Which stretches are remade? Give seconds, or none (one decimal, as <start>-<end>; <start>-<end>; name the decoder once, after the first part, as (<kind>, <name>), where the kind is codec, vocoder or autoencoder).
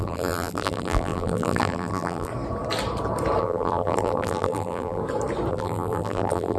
0.0-2.3 (vocoder, BigVGAN v2); 3.4-5.0; 5.5-6.6